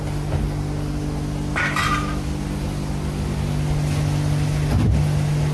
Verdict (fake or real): real